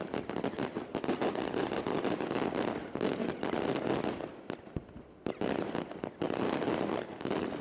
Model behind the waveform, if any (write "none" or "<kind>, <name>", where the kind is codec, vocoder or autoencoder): vocoder, BigVGAN v2